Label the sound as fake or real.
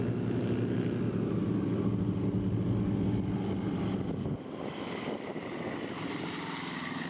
real